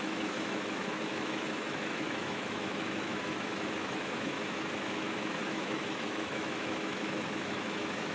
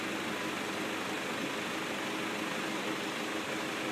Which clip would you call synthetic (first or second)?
first